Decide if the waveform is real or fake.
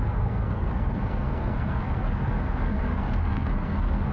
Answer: fake